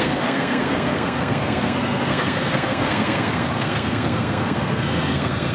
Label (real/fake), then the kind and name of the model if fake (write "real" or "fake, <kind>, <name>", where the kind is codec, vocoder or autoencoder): fake, codec, SNAC